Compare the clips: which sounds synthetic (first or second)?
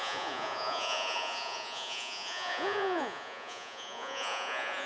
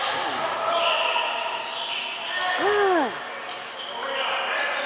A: first